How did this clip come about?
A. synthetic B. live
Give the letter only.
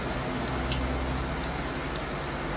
B